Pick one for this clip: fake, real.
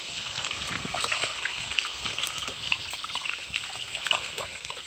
fake